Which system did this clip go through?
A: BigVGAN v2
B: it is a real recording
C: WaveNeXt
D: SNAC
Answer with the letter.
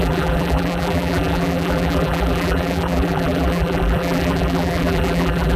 A